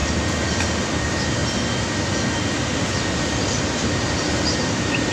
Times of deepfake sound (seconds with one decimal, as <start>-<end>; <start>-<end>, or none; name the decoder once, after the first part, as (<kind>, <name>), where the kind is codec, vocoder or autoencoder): none